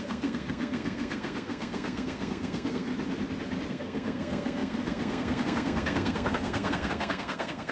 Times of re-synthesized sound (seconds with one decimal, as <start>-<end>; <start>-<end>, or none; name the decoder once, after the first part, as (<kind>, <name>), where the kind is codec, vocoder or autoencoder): 0.0-2.9 (codec, SNAC); 3.7-7.7